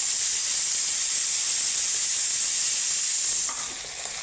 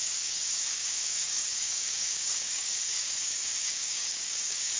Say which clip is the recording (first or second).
first